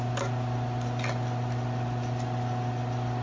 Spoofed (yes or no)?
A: no